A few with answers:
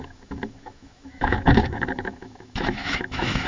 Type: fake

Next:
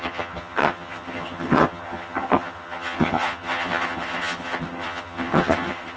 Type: fake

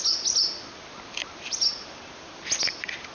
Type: real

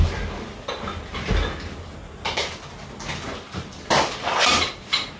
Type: real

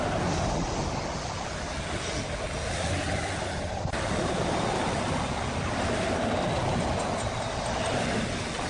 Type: real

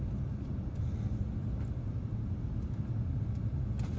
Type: real